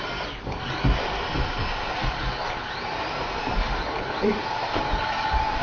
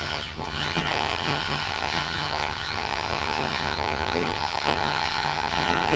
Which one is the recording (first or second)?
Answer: first